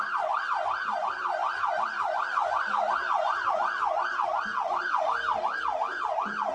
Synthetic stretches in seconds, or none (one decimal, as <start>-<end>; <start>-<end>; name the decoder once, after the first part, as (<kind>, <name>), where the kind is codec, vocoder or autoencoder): 4.5-5.0 (vocoder, Vocos)